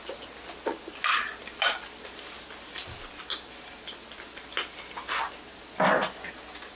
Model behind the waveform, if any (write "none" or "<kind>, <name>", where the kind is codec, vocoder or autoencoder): none